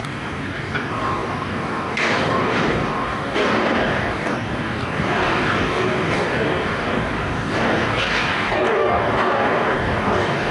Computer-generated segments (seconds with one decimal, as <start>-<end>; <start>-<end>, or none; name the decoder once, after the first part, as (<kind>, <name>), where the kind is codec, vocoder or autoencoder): 0.0-10.5 (codec, DAC)